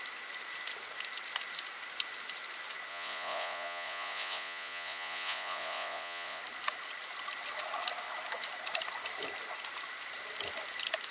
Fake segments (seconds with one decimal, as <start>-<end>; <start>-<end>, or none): 2.9-6.4